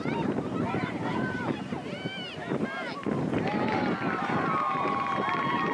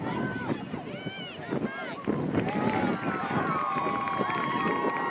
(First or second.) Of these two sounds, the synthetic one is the first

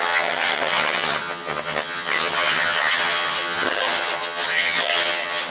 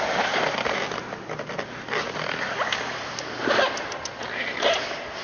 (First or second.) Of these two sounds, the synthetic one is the first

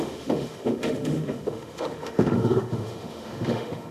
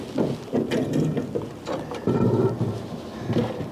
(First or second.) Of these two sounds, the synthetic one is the first